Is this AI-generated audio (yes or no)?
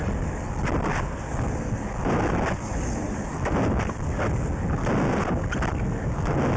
no